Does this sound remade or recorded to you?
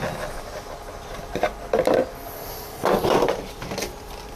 recorded